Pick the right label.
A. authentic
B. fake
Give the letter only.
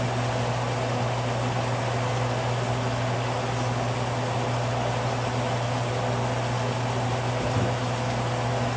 A